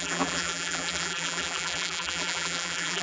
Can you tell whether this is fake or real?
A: fake